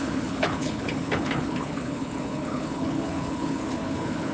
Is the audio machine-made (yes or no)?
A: yes